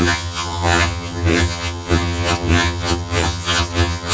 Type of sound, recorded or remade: remade